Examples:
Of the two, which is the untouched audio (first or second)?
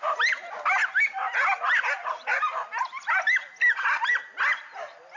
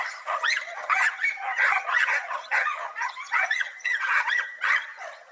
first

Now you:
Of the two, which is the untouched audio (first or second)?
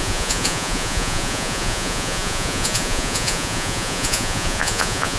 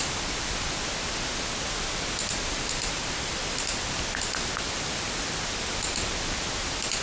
second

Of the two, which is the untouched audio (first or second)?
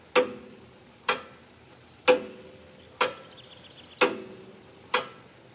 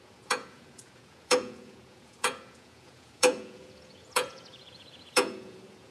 first